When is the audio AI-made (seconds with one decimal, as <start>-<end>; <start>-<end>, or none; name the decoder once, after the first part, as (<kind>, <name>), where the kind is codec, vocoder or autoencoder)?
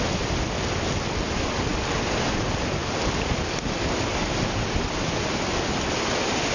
2.8-5.3 (vocoder, BigVGAN v2)